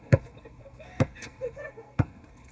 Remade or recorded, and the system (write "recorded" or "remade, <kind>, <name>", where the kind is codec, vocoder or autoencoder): remade, codec, SNAC